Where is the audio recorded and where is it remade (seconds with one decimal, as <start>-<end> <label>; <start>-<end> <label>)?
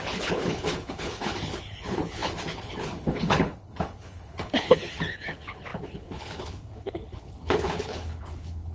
0.0-8.7 remade